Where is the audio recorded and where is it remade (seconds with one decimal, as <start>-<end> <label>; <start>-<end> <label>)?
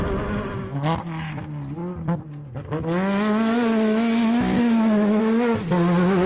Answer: 0.0-6.3 recorded